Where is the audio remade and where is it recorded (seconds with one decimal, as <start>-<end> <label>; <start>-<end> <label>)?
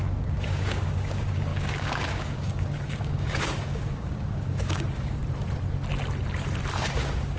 0.0-5.2 remade; 5.2-6.8 recorded; 6.8-7.4 remade